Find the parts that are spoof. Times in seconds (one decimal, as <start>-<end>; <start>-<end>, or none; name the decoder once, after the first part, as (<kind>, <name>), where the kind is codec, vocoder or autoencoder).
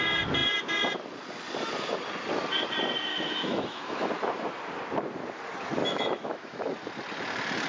3.1-4.1 (autoencoder, DAC-VAE); 5.8-6.7